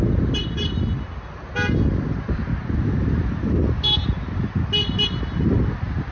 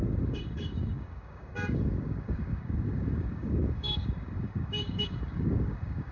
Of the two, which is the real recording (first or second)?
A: first